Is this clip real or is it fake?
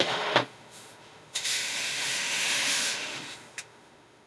fake